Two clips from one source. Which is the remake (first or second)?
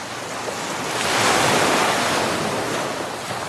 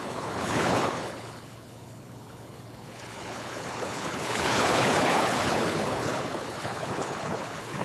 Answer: second